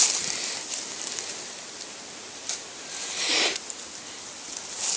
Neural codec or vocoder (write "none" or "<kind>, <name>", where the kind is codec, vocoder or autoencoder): none